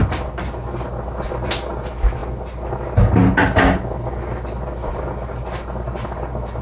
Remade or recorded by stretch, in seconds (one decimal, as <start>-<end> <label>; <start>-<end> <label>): 0.0-6.6 recorded